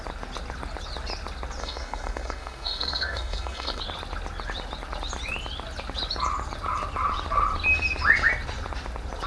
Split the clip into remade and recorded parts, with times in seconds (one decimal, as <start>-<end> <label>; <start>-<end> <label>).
0.0-1.6 recorded; 1.6-3.8 remade; 3.8-9.3 recorded